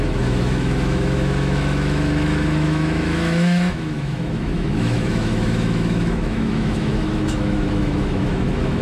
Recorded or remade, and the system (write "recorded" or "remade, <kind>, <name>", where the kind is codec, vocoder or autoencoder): remade, autoencoder, DAC-VAE